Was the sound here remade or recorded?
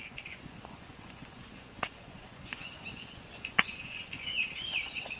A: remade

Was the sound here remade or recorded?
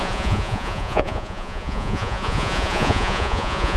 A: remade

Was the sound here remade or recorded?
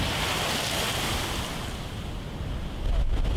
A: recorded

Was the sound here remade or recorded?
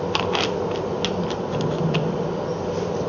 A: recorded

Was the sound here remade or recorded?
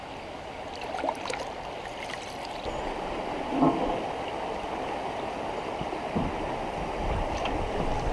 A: recorded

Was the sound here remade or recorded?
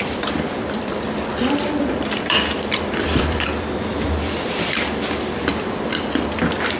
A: remade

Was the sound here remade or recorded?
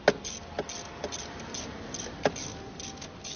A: recorded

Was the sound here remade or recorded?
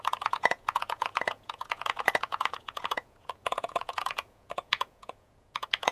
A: remade